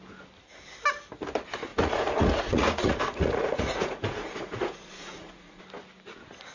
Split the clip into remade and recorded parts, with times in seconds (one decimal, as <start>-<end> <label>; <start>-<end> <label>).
0.0-1.7 recorded; 1.7-5.6 remade; 5.6-6.5 recorded